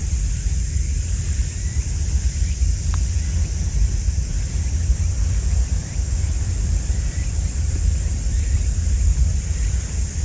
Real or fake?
fake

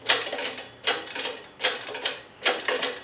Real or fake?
real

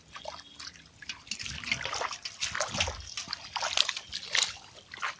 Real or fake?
real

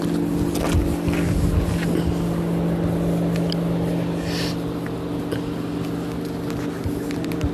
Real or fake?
real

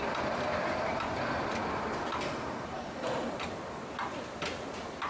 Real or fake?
real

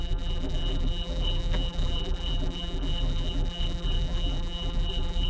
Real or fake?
fake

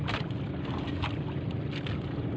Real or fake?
real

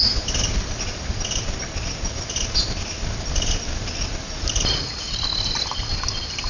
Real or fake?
real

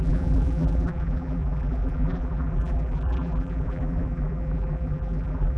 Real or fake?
fake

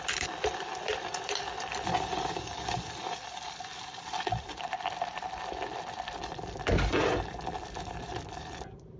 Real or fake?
fake